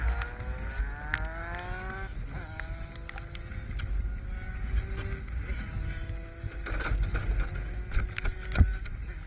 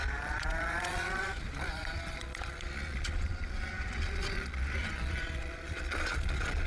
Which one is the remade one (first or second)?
second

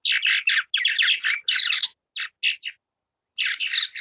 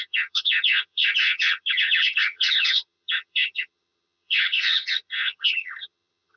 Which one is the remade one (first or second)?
second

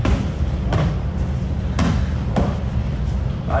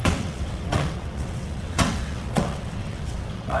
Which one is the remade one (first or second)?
second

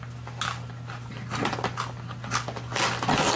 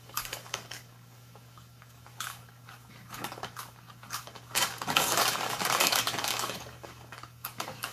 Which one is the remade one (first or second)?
second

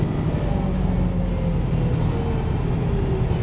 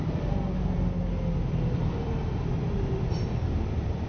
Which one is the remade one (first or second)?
second